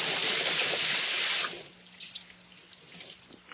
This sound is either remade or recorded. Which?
recorded